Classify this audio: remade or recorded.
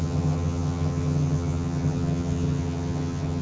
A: remade